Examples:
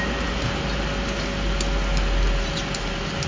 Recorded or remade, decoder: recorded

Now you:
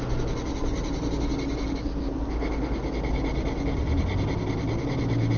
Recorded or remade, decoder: recorded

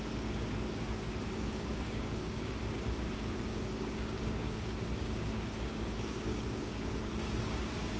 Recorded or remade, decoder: remade, codec, DAC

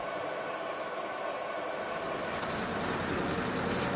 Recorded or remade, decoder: recorded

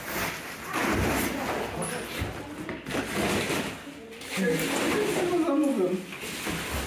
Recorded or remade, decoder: recorded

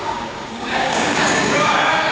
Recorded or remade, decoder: remade, codec, DAC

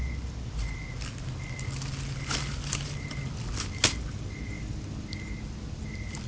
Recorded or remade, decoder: recorded